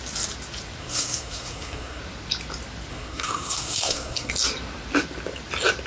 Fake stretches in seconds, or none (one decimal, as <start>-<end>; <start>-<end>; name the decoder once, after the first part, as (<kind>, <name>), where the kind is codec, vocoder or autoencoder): 0.8-2.0 (codec, SNAC); 2.9-4.3